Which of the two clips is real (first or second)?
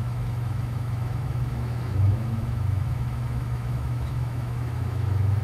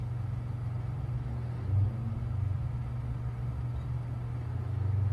second